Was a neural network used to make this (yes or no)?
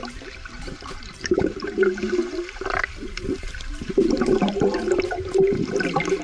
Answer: yes